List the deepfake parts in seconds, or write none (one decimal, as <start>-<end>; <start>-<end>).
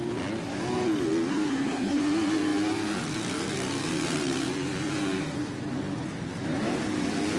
1.3-2.0